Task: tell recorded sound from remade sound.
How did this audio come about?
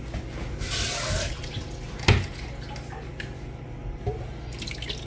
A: recorded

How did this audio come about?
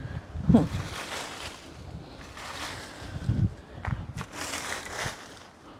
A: recorded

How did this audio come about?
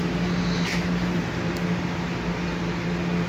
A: recorded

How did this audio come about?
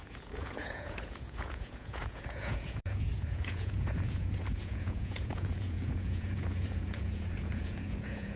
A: remade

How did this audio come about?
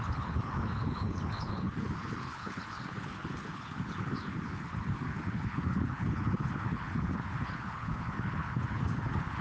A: remade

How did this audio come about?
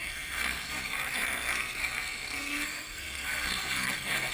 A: remade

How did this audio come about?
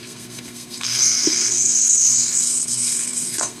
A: remade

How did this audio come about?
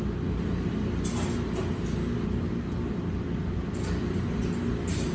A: recorded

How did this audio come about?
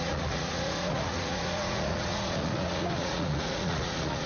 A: remade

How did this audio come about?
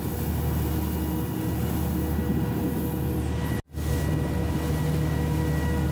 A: recorded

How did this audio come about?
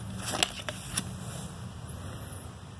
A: recorded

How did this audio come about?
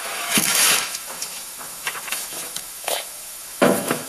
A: remade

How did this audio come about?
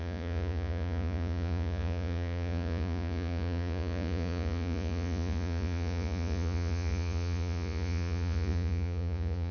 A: remade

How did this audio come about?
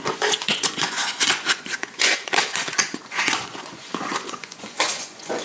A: remade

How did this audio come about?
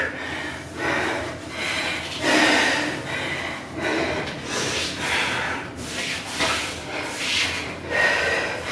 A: recorded